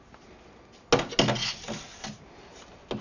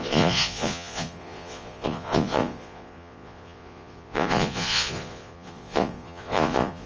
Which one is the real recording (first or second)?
first